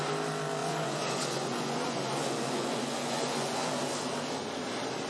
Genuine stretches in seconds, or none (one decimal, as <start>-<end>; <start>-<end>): 0.0-0.6; 3.7-5.1